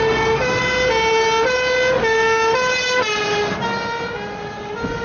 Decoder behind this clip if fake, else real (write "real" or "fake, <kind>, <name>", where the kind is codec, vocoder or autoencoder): real